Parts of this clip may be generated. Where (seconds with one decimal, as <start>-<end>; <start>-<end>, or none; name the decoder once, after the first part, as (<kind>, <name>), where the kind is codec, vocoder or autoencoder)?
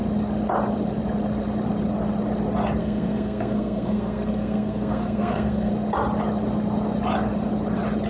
2.8-5.7 (codec, SNAC)